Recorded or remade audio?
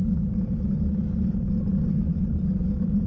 recorded